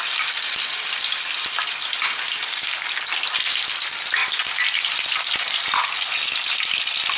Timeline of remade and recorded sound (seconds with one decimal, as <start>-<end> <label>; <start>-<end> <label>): 0.0-7.2 recorded